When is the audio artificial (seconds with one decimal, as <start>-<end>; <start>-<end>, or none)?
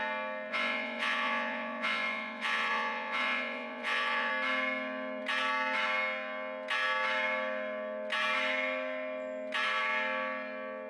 0.5-4.3